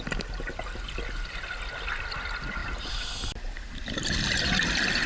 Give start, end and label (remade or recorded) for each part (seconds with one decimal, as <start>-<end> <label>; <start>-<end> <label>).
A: 0.0-5.1 recorded